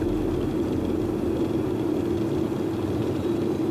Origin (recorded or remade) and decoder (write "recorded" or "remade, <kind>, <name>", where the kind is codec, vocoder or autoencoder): recorded